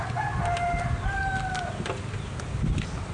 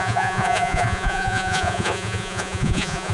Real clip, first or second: first